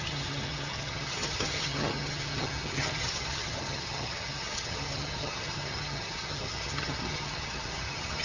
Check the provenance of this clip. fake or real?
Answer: fake